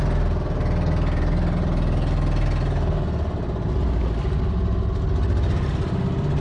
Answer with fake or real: real